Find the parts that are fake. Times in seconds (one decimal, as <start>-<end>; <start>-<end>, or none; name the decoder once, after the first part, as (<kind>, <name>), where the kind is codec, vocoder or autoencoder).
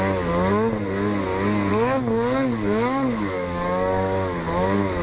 1.7-5.0 (codec, DAC)